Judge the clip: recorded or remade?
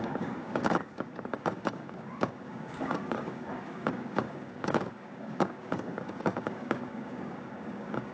remade